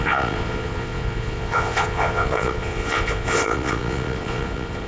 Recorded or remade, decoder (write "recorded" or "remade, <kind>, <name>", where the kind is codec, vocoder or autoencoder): remade, vocoder, Vocos